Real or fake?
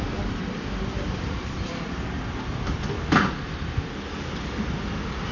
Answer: real